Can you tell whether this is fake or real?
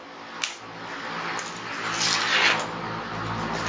real